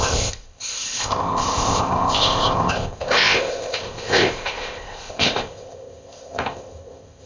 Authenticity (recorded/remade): remade